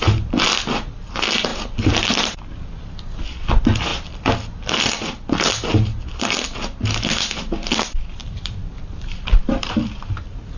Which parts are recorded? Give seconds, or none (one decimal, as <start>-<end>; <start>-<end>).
0.0-8.2; 10.2-10.6